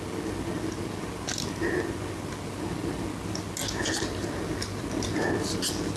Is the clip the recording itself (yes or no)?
yes